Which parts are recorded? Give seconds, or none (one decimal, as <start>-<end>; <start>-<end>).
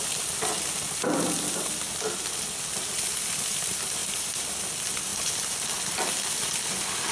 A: 0.0-7.1